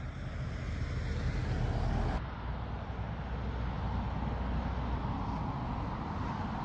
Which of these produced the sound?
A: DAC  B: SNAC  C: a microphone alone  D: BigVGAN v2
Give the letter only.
C